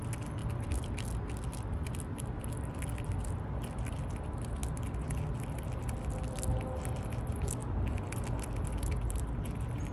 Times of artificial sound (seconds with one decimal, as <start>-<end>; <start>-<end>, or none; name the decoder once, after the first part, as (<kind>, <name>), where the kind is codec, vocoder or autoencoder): none